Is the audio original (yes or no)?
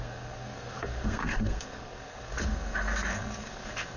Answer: no